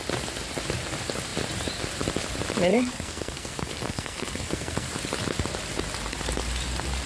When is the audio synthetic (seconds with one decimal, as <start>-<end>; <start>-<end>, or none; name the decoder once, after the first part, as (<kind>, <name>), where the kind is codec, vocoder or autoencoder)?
2.7-4.9 (codec, SNAC)